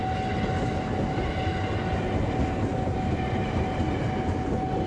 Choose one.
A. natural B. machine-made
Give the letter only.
A